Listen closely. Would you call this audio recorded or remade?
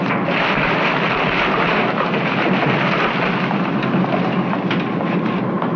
recorded